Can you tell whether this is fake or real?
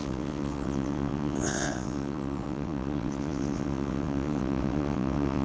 fake